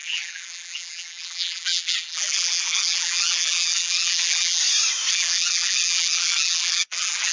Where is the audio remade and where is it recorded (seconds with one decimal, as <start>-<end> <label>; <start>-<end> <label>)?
0.0-4.6 remade; 4.6-5.1 recorded; 5.1-7.3 remade